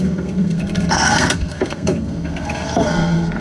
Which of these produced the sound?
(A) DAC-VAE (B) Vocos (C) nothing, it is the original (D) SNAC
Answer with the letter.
D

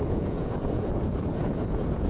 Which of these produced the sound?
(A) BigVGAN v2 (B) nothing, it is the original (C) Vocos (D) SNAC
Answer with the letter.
C